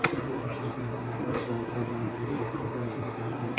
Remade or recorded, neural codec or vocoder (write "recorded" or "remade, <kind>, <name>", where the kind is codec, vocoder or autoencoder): remade, codec, SNAC